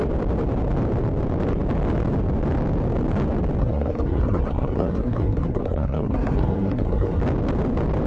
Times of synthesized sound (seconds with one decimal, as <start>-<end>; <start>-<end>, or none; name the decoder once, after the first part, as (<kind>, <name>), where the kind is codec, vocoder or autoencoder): 3.6-7.2 (codec, SNAC)